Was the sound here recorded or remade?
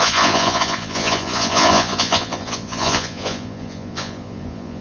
remade